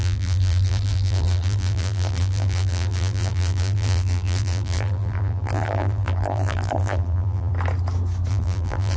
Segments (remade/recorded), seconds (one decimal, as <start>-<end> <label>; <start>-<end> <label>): 0.0-7.5 remade; 7.5-8.3 recorded; 8.3-9.0 remade